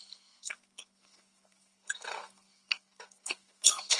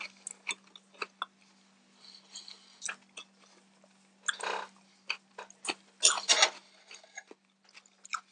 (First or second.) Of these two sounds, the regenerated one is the first